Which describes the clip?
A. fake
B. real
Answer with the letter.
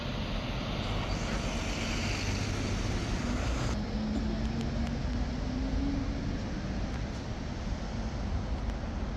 B